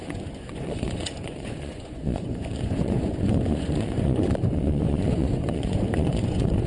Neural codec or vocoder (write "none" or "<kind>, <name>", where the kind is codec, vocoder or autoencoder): vocoder, Vocos